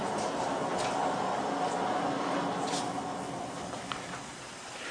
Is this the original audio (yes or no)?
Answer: yes